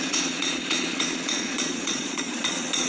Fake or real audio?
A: fake